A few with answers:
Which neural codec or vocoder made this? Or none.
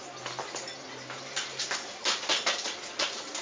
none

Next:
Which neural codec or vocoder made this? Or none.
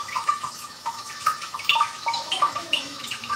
autoencoder, DAC-VAE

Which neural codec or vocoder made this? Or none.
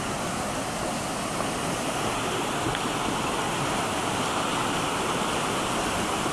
none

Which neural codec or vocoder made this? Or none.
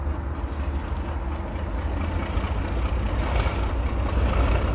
none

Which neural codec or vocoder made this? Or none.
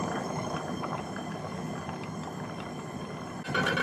none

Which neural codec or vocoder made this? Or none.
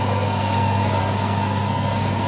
codec, SNAC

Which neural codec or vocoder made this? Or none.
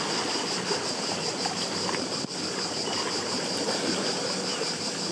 none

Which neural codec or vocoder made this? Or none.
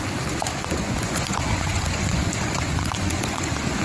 vocoder, Vocos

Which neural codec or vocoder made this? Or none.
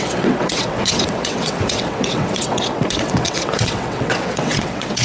vocoder, WaveNeXt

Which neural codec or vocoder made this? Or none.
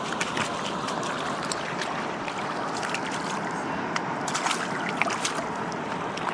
none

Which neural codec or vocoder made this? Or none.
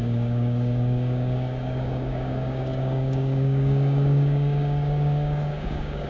codec, DAC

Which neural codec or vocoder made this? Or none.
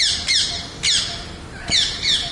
none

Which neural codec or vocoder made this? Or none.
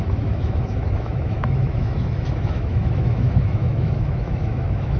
autoencoder, DAC-VAE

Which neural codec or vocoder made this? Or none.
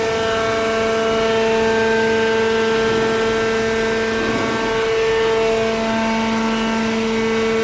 none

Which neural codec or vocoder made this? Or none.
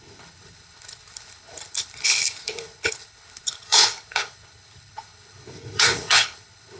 codec, HILCodec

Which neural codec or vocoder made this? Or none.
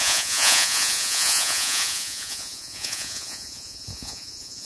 vocoder, Vocos